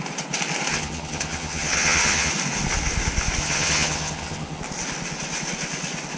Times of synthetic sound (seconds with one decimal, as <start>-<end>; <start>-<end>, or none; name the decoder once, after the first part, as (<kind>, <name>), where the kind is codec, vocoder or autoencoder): 0.7-2.3 (vocoder, HiFi-GAN); 3.4-4.6